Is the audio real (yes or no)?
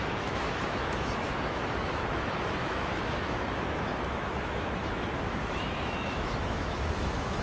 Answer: no